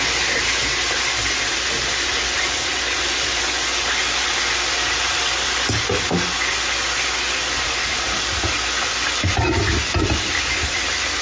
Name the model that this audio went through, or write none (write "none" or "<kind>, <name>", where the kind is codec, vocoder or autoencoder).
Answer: none